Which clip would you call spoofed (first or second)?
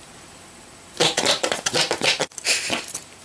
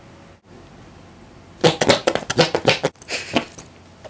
first